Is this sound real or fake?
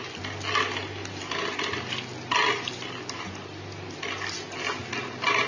real